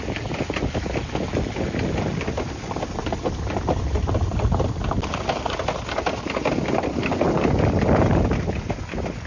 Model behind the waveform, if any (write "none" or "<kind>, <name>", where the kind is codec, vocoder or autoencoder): none